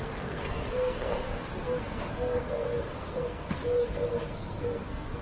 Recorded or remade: remade